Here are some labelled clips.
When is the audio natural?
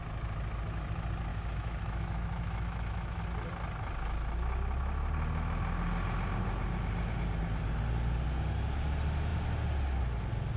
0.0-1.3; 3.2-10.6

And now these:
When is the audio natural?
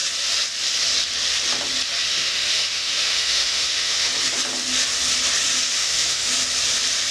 0.0-2.1; 4.1-5.8; 6.3-7.1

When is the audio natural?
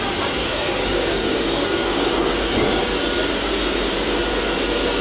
0.0-0.4; 2.3-5.0